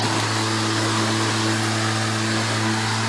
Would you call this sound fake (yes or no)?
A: no